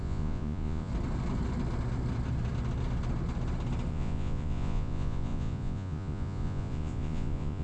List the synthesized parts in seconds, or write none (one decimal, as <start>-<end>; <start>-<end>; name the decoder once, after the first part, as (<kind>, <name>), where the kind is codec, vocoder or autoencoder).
0.0-0.9 (vocoder, Vocos); 3.9-7.6